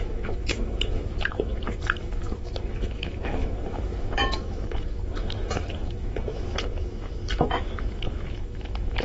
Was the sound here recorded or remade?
remade